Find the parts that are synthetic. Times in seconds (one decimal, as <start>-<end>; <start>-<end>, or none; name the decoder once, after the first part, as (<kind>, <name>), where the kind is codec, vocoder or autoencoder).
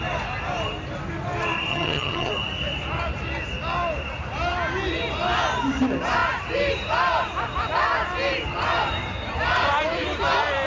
1.7-2.3 (vocoder, HiFi-GAN)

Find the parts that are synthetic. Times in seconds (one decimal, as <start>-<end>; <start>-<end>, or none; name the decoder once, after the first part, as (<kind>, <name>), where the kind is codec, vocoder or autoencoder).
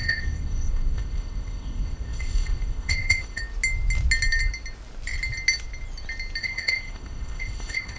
0.0-3.4 (codec, ZipCodec); 6.4-8.0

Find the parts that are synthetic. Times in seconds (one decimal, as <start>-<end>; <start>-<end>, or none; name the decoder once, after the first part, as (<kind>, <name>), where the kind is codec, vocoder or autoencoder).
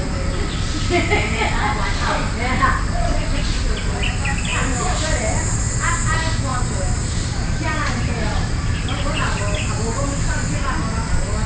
6.5-9.4 (vocoder, BigVGAN v2)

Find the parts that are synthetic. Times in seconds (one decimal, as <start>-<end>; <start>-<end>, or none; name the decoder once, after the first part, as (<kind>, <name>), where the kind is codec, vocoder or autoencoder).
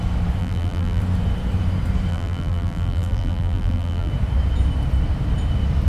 0.4-1.0 (vocoder, BigVGAN v2); 2.1-4.1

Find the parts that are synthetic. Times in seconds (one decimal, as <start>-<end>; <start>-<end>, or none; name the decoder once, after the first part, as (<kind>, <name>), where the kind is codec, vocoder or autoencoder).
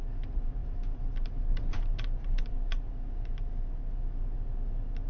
none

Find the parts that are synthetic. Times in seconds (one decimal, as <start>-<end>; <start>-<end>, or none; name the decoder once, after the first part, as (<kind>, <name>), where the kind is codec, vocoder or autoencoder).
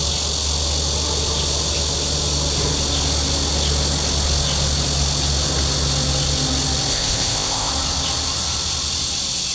6.9-7.7 (codec, ZipCodec)